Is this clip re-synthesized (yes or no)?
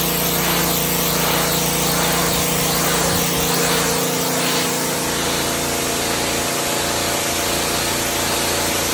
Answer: no